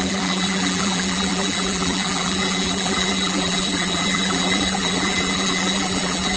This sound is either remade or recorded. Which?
remade